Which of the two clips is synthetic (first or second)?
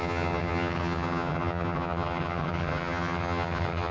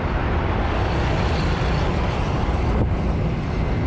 first